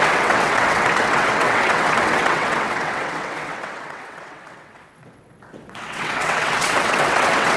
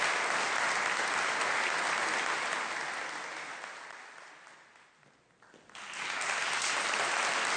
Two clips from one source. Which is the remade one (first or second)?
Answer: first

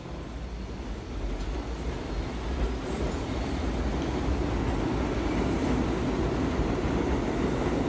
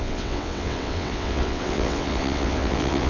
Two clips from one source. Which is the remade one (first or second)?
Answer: second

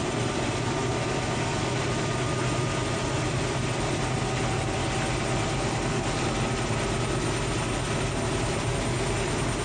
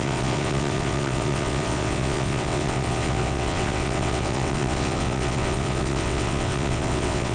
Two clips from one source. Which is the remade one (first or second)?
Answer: second